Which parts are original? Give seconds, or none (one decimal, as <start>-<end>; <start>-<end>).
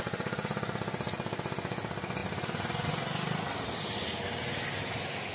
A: 0.0-5.3